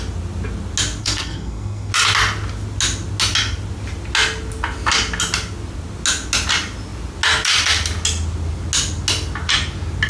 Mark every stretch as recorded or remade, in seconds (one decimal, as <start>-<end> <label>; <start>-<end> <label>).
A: 0.0-1.0 recorded; 1.0-1.9 remade; 1.9-10.1 recorded